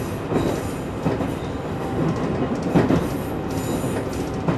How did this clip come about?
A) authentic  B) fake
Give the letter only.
A